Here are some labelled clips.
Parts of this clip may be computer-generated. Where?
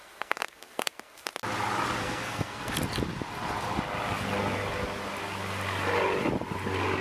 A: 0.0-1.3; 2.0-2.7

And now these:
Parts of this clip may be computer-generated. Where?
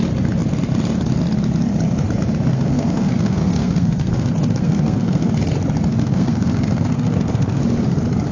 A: 2.5-5.3; 5.9-7.6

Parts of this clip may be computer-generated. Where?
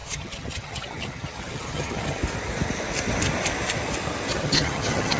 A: 0.0-2.2; 4.3-5.2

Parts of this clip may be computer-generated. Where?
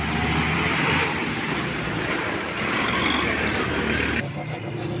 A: none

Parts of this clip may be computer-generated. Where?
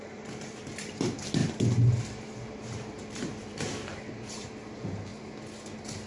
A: 0.0-1.4; 2.0-5.1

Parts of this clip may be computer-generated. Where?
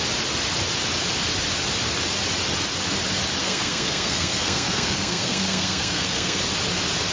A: 3.4-6.4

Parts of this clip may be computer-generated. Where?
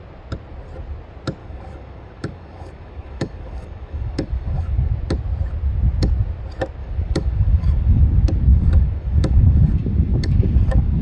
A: 1.4-4.9; 6.8-8.0; 8.5-11.0